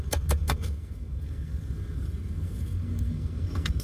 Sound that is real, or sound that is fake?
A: fake